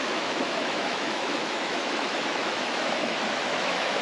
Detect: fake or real fake